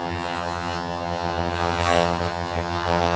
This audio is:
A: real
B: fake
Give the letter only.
B